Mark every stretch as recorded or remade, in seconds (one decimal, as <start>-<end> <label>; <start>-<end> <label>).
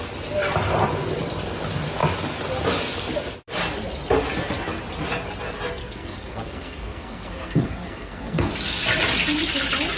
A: 0.0-5.8 recorded; 5.8-8.5 remade; 8.5-10.0 recorded